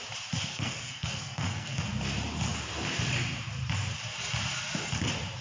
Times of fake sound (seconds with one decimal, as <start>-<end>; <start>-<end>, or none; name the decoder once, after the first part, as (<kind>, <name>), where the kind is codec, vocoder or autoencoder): 0.5-1.9 (codec, SNAC)